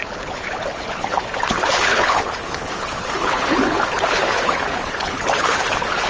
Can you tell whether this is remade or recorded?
remade